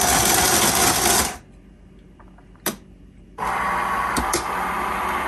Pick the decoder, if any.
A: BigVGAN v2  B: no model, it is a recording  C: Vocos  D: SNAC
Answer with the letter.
B